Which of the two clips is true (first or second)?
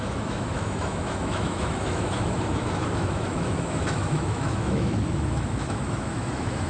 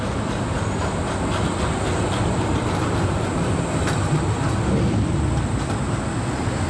second